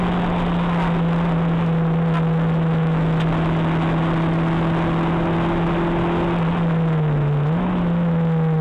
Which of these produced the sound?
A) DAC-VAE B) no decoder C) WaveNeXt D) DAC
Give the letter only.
B